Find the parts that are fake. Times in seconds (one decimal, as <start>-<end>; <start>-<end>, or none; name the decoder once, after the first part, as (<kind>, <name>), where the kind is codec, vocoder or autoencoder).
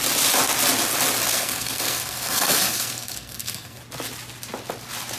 1.3-3.8 (codec, SNAC)